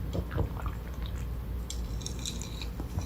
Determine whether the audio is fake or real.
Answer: real